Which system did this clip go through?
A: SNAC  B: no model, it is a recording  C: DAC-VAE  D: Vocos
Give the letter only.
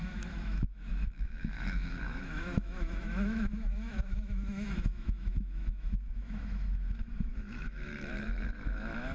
C